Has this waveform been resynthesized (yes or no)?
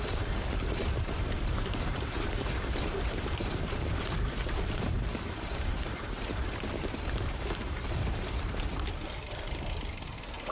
yes